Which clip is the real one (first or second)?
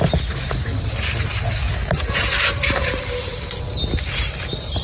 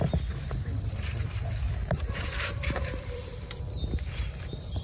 first